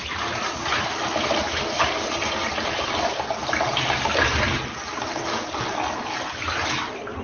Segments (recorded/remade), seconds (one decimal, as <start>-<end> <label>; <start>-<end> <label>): 0.0-7.2 recorded